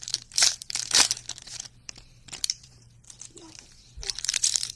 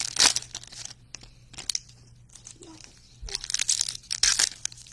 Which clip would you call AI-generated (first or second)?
first